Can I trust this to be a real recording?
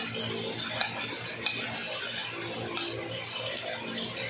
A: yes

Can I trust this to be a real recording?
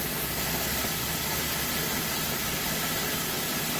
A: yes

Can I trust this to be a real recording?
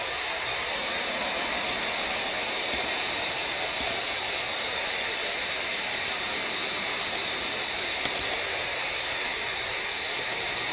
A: no